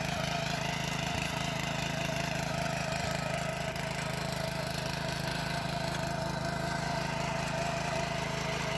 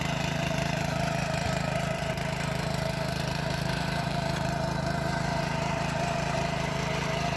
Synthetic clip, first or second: second